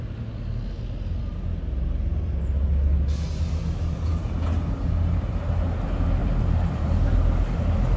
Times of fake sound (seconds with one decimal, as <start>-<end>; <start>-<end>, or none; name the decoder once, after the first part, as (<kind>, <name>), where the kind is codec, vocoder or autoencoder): 6.2-7.0 (vocoder, BigVGAN v2)